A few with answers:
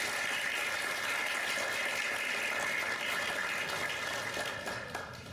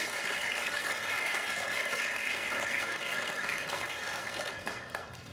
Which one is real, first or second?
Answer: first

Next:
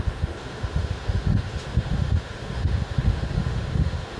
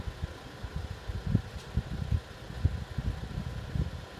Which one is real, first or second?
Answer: second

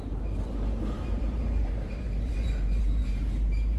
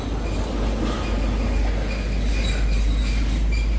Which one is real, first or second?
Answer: second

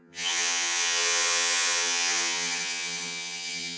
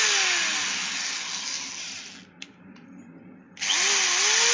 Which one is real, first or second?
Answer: second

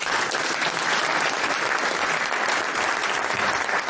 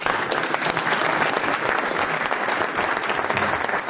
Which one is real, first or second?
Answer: second